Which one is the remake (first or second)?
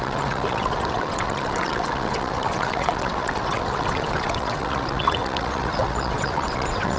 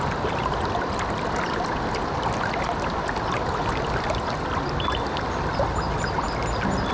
first